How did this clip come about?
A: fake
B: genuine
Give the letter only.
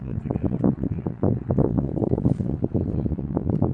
A